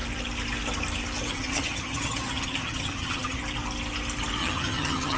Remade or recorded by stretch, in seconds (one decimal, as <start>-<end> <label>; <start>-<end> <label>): 0.0-1.3 recorded; 1.3-3.4 remade; 3.4-4.4 recorded; 4.4-5.2 remade